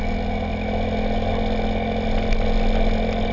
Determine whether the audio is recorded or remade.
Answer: recorded